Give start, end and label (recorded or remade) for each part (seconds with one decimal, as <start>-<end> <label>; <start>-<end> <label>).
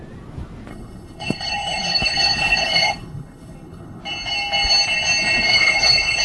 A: 0.0-0.7 recorded; 0.7-4.0 remade; 4.0-5.5 recorded; 5.5-6.2 remade